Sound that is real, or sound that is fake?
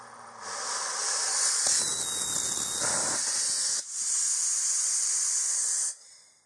real